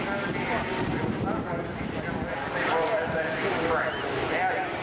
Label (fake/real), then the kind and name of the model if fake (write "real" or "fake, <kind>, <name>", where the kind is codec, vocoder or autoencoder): real